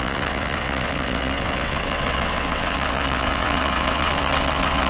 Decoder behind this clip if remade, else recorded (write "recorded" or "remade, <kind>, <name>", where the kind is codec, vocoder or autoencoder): remade, vocoder, WaveNeXt